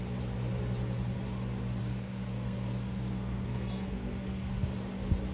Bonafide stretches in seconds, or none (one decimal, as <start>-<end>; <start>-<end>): 0.0-1.8; 4.5-5.3